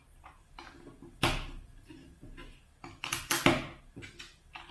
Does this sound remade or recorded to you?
recorded